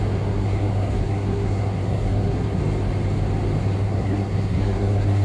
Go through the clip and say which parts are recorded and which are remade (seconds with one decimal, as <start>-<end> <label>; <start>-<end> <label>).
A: 0.0-2.6 remade; 2.6-3.6 recorded; 3.6-5.2 remade

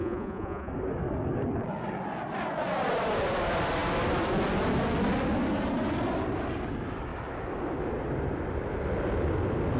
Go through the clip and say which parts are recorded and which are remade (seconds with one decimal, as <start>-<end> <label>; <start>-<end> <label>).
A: 0.0-0.7 remade; 0.7-9.8 recorded

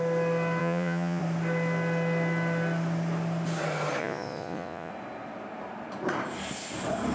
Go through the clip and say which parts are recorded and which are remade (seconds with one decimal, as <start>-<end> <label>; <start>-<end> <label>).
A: 0.0-0.6 recorded; 0.6-1.2 remade; 1.2-4.0 recorded; 4.0-4.9 remade; 4.9-7.1 recorded

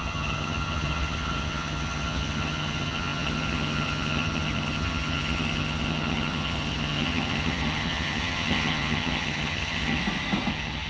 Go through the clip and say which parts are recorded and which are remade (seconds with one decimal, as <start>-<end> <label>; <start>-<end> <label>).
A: 0.0-10.0 remade; 10.0-10.5 recorded; 10.5-10.9 remade

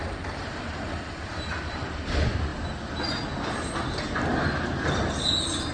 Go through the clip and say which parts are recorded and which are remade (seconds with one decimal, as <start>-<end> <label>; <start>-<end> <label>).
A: 0.0-5.7 recorded